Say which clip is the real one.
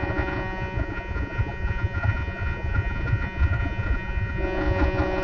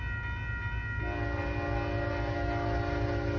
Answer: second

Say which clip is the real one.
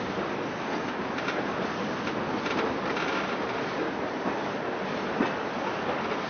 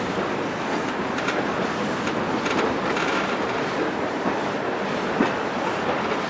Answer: first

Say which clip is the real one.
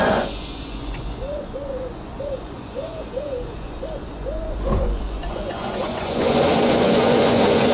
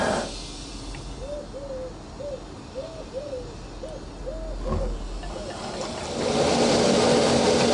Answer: second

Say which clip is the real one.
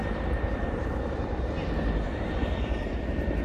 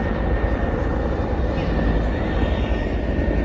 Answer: second